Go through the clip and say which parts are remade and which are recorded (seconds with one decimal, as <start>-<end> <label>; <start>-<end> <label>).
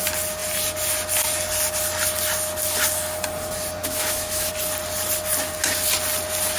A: 0.0-3.8 recorded; 3.8-4.5 remade; 4.5-6.6 recorded